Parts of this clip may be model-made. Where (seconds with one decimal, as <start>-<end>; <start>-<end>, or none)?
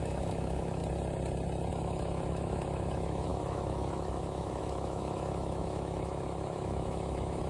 0.0-0.8; 1.7-7.5